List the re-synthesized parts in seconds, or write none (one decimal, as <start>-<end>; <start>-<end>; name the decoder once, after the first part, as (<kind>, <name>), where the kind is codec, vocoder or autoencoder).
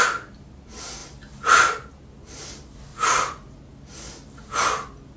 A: 2.9-3.6 (vocoder, Vocos)